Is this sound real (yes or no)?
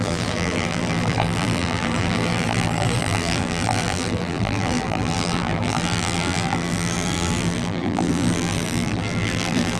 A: no